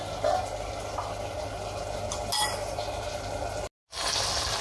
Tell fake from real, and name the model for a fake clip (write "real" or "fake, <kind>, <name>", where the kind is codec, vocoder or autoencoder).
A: real